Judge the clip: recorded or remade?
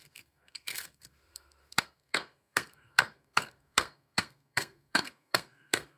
remade